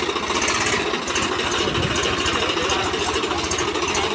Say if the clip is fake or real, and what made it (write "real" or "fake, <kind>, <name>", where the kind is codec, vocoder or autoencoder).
real